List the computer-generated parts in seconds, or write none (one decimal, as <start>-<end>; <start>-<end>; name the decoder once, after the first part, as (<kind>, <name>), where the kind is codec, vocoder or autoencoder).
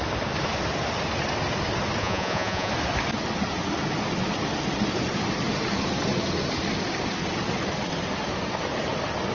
2.0-2.7 (vocoder, Vocos)